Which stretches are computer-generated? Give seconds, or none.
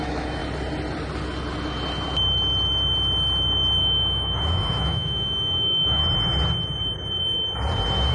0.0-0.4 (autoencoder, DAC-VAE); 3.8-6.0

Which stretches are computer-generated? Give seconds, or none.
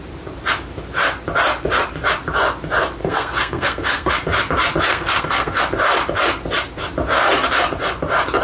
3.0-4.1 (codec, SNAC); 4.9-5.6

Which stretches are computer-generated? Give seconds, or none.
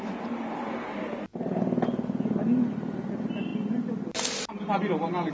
none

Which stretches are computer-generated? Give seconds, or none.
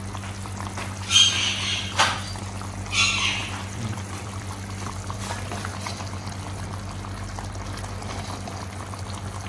3.4-5.2 (vocoder, BigVGAN v2)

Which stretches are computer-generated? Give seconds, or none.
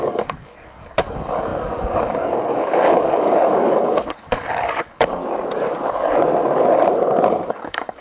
0.0-5.2 (codec, DAC); 7.5-8.0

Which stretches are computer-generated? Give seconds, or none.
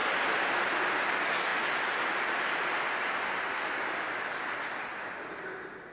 none